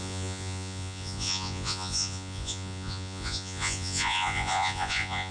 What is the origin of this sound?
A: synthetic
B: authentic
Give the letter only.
A